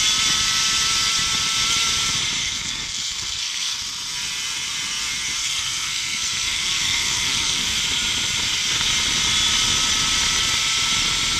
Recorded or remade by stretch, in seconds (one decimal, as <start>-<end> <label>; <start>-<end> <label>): 0.0-2.4 recorded; 2.4-3.8 remade; 3.8-5.4 recorded; 5.4-7.8 remade; 7.8-11.4 recorded